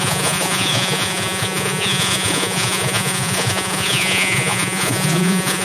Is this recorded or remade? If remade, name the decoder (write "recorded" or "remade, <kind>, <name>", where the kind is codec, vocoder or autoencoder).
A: remade, vocoder, Vocos